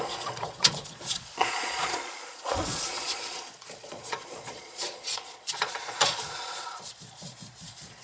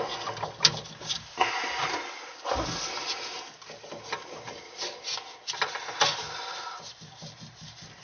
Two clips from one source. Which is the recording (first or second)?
second